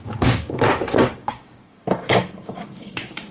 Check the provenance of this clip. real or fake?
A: fake